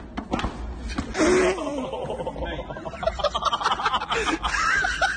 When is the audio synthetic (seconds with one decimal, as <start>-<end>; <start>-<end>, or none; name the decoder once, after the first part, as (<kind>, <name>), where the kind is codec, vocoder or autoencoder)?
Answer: none